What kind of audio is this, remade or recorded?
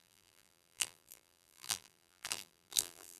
remade